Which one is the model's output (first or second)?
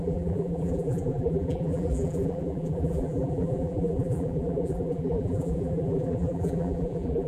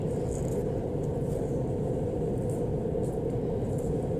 first